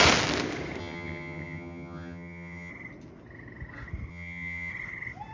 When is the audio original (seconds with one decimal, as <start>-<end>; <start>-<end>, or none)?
0.0-0.8; 2.7-4.1; 4.7-5.3